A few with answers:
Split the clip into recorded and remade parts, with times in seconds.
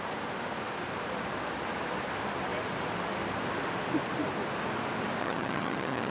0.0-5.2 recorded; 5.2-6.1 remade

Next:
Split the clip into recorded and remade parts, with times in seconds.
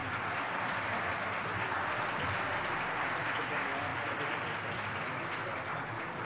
0.0-6.2 recorded